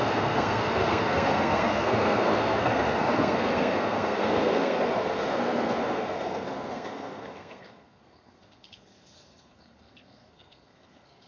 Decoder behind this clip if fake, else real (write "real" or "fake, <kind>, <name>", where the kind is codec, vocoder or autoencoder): fake, codec, SNAC